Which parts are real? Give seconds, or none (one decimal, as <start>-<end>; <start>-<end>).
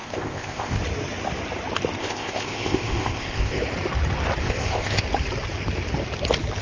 0.8-2.0; 3.6-4.4; 5.0-6.6